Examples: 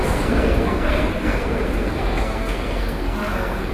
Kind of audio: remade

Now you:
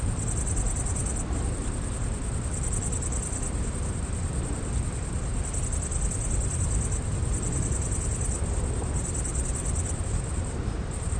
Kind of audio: recorded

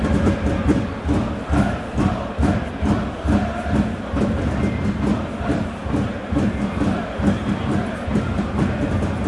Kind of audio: recorded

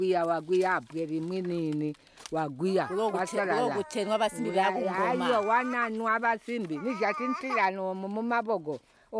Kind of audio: recorded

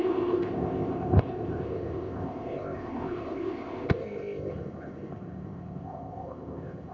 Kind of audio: remade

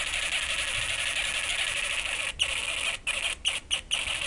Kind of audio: recorded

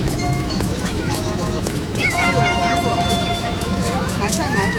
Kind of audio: remade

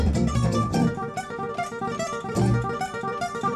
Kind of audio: remade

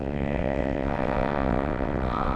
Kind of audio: remade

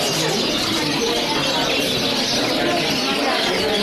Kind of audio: recorded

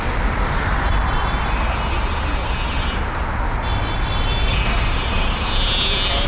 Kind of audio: recorded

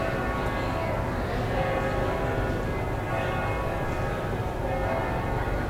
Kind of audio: recorded